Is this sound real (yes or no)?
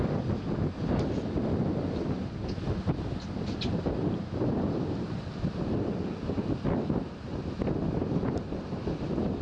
yes